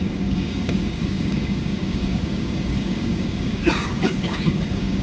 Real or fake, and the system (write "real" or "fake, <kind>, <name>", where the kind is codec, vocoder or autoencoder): fake, codec, DAC